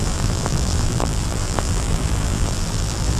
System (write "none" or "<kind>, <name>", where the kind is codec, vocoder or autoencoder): vocoder, BigVGAN v2